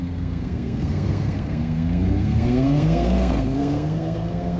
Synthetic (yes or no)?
yes